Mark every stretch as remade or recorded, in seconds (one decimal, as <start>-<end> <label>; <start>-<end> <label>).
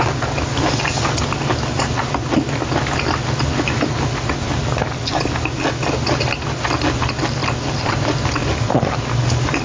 0.0-9.6 recorded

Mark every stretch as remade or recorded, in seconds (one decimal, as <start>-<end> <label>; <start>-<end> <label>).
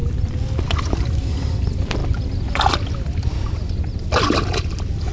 0.0-5.1 recorded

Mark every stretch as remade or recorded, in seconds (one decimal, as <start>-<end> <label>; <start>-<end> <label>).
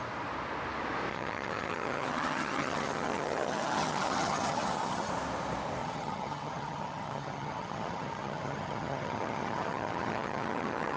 0.0-1.1 recorded; 1.1-5.1 remade; 5.1-5.8 recorded; 5.8-11.0 remade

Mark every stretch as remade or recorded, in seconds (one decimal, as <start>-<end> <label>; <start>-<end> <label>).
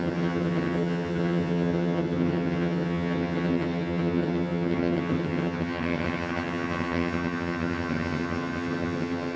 0.0-9.4 remade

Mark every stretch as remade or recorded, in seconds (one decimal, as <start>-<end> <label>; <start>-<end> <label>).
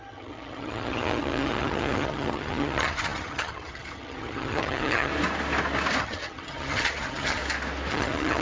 0.0-5.1 remade; 5.1-6.0 recorded; 6.0-7.4 remade; 7.4-7.9 recorded; 7.9-8.4 remade